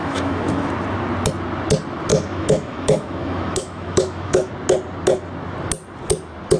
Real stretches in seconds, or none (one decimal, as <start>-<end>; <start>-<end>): 0.7-2.1; 4.5-6.6